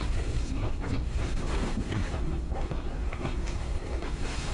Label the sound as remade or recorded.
remade